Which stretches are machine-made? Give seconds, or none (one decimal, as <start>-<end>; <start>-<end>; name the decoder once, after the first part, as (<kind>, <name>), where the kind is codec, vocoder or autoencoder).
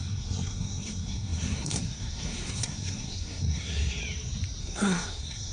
0.0-4.0 (codec, SNAC); 4.6-5.5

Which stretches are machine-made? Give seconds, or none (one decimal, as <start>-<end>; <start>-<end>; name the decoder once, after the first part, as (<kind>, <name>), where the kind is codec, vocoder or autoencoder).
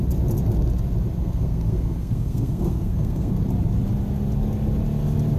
1.2-3.3 (codec, SNAC)